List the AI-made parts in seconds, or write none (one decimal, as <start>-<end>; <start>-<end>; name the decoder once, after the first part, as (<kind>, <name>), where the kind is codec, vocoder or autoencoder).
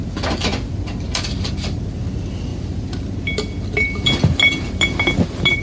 none